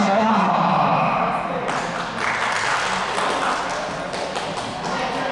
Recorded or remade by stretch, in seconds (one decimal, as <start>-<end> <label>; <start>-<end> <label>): 0.0-0.5 remade; 0.5-5.3 recorded